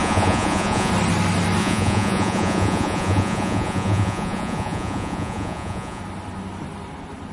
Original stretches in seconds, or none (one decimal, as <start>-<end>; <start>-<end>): 0.9-1.6; 6.0-7.3